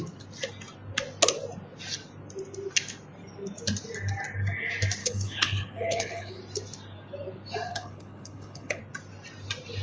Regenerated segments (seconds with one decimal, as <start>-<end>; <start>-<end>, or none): 5.0-6.4; 7.7-8.8